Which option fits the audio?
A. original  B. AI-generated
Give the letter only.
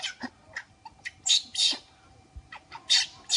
A